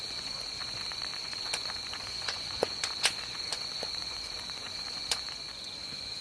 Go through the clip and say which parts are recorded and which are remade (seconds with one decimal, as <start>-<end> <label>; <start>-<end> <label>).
0.0-6.2 remade